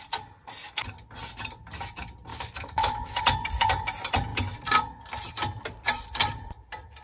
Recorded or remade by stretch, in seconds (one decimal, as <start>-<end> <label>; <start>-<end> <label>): 0.0-2.3 recorded; 2.3-3.2 remade; 3.2-7.0 recorded